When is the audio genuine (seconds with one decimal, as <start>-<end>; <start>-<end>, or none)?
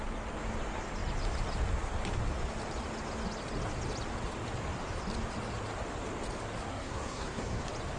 0.0-6.7; 7.6-8.0